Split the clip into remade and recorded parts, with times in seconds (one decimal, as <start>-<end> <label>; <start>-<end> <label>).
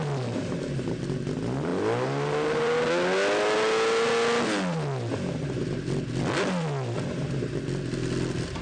0.0-1.7 recorded; 1.7-2.9 remade; 2.9-8.6 recorded